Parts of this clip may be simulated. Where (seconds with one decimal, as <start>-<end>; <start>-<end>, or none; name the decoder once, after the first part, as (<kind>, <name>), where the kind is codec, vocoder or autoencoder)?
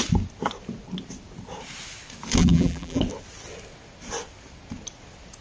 2.4-3.0 (vocoder, BigVGAN v2)